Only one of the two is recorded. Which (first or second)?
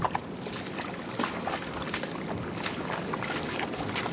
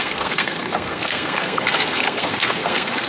first